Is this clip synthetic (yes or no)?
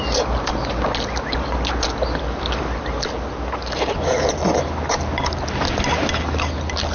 no